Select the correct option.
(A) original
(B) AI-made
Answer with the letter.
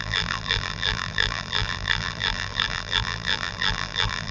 B